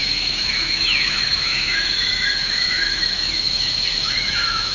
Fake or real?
fake